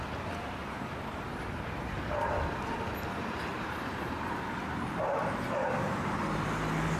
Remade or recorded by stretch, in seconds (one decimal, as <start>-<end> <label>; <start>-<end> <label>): 0.0-0.6 recorded; 0.6-2.0 remade; 2.0-3.5 recorded; 3.5-6.2 remade; 6.2-7.0 recorded